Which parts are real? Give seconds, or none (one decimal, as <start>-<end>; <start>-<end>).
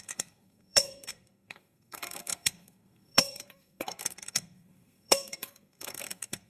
none